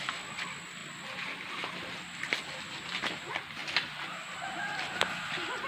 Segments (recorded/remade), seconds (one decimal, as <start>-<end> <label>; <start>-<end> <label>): 0.0-5.7 recorded